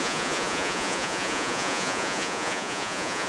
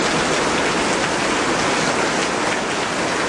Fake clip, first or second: first